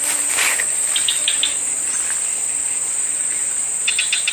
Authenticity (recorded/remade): recorded